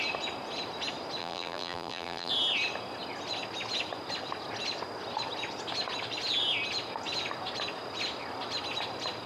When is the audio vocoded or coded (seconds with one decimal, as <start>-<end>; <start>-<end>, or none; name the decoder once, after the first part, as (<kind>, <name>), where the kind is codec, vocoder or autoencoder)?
1.2-2.3 (vocoder, BigVGAN v2)